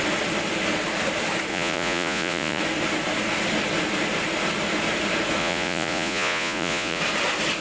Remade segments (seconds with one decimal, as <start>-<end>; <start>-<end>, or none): 1.5-2.6; 5.4-7.0

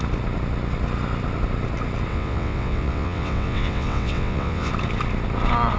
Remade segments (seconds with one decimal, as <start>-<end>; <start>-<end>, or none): 2.1-4.7

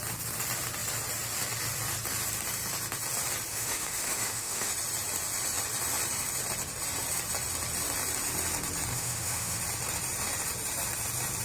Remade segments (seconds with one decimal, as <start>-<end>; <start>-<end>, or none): 3.5-4.7; 8.9-9.6

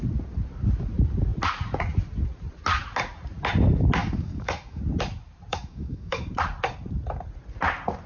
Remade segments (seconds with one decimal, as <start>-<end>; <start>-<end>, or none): 4.0-4.8; 5.5-6.3

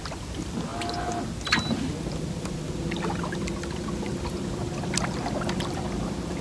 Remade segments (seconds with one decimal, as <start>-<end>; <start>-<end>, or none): none

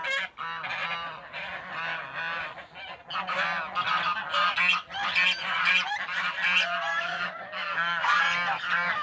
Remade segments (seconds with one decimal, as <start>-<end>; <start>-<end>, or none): 6.9-8.2

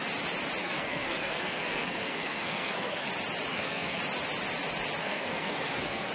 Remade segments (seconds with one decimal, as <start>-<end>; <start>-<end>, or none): 0.6-3.1; 3.5-4.0; 5.0-6.1